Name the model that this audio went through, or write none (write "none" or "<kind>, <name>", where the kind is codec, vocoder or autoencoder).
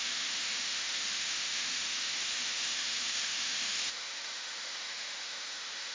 autoencoder, DAC-VAE